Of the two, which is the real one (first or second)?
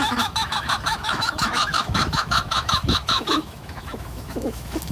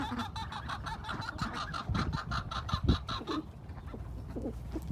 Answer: second